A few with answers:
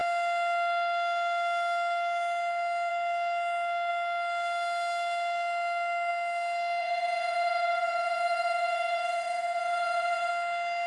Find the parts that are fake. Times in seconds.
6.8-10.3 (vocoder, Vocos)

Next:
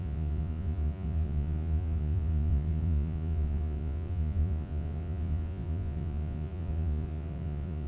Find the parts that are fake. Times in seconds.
0.0-7.9 (vocoder, Vocos)

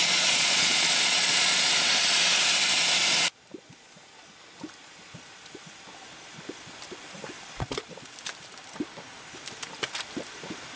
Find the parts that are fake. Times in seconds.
0.0-1.7 (vocoder, Vocos)